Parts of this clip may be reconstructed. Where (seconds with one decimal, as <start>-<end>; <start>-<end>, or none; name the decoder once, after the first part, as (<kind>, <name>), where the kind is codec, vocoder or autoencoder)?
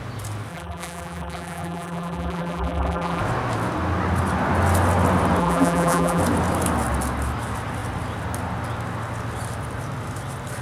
0.5-3.2 (vocoder, BigVGAN v2); 5.4-6.2